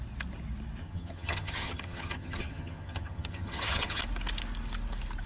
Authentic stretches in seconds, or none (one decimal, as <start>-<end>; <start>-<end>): 0.0-0.8; 4.0-5.3